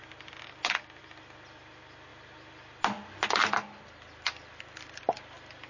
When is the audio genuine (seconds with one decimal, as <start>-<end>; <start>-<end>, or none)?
0.0-5.7

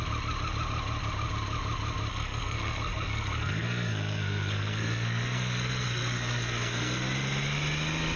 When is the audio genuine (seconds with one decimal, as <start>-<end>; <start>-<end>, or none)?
0.0-2.1; 7.0-8.2

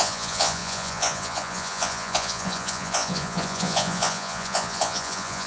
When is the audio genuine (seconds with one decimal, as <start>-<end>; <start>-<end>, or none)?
none

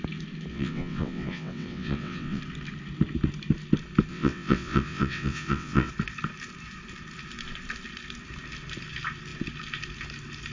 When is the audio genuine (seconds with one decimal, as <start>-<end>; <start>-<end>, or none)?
0.0-0.5; 2.4-4.1; 5.9-10.5

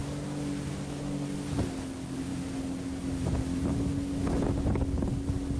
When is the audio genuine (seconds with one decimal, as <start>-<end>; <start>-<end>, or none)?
0.0-5.6

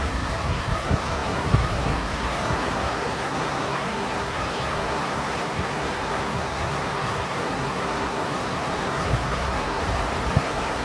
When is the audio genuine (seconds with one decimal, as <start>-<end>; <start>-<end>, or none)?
9.8-10.3